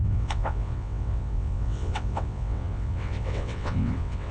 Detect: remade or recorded remade